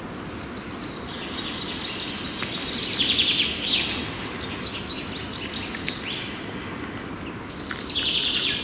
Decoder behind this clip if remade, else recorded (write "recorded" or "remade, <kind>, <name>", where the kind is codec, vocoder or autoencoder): recorded